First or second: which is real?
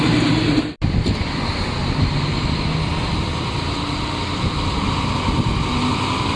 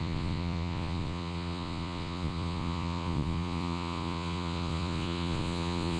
first